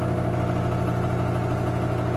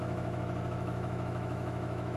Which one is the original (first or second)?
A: first